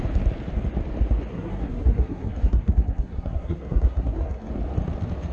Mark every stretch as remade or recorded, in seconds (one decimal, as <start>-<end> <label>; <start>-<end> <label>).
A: 0.0-1.3 recorded; 1.3-4.5 remade; 4.5-5.3 recorded